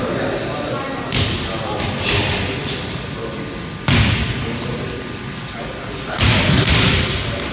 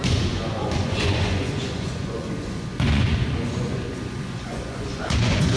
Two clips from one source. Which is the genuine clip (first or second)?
first